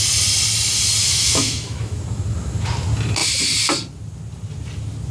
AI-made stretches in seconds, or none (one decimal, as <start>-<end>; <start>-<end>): 1.0-2.0